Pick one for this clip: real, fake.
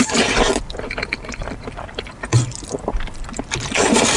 real